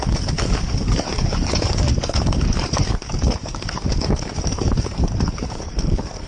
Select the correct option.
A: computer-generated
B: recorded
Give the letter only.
A